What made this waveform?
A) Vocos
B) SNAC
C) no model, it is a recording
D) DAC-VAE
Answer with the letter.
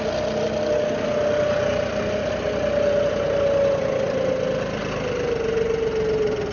C